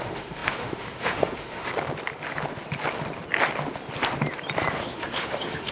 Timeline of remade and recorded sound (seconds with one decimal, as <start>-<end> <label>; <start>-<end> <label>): 0.0-1.7 remade; 1.7-4.7 recorded; 4.7-5.7 remade